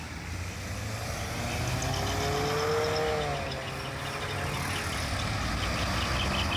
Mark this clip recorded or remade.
recorded